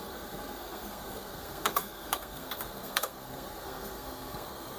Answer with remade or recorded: remade